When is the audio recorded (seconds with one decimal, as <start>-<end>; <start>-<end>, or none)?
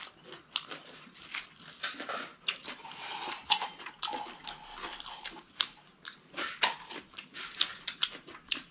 0.0-2.3; 3.9-4.8; 7.3-8.7